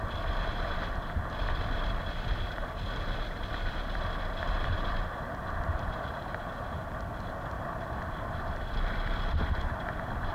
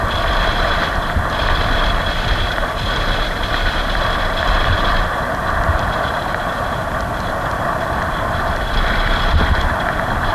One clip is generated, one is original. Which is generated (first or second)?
second